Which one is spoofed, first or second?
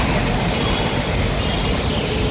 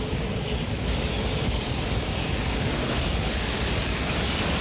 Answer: second